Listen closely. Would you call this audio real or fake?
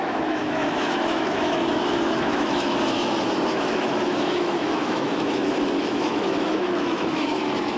fake